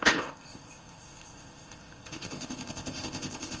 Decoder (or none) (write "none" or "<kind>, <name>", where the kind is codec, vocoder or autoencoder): codec, ZipCodec